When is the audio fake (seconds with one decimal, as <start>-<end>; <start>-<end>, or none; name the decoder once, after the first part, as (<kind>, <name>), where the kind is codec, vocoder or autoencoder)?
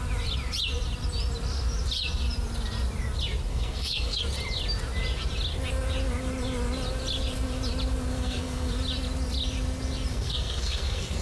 3.5-4.2 (codec, SNAC); 8.1-8.7; 10.1-11.2